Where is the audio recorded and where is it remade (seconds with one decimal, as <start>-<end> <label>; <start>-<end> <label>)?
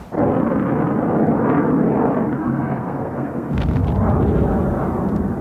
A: 0.0-2.4 recorded; 2.4-3.8 remade; 3.8-5.4 recorded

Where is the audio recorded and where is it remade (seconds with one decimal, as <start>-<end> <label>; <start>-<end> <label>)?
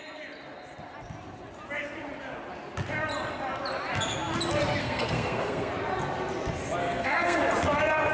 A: 0.0-4.8 recorded; 4.8-5.7 remade; 5.7-6.8 recorded; 6.8-7.4 remade; 7.4-8.1 recorded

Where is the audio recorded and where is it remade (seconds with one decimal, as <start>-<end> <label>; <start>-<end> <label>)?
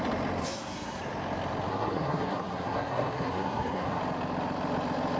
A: 0.0-0.4 recorded; 0.4-1.0 remade; 1.0-1.7 recorded; 1.7-4.0 remade; 4.0-5.2 recorded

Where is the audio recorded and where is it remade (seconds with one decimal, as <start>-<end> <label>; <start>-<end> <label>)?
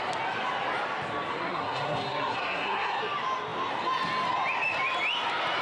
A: 0.0-1.3 recorded; 1.3-3.0 remade; 3.0-5.6 recorded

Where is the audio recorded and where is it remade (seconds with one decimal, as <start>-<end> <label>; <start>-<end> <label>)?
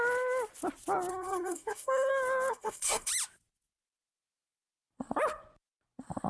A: 0.0-1.1 recorded; 1.1-2.1 remade; 2.1-2.5 recorded; 2.5-3.1 remade; 3.1-6.3 recorded